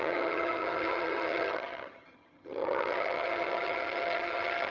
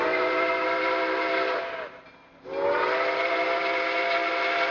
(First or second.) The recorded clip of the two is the second